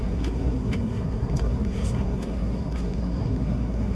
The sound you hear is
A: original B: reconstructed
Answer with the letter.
B